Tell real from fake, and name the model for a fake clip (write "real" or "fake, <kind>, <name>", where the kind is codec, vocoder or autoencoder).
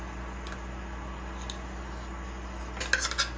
real